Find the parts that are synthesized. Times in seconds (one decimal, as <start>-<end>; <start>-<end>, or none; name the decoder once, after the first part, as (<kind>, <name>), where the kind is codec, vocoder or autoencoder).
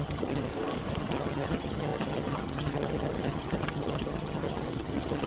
0.0-0.5 (vocoder, HiFi-GAN); 1.0-5.3